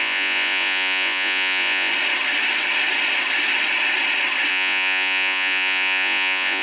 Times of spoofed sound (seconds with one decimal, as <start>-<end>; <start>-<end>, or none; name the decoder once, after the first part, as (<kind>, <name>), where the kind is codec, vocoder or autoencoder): 0.0-1.9 (vocoder, Vocos); 4.5-6.6